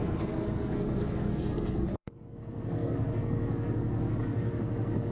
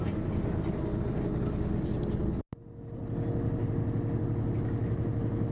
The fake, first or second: first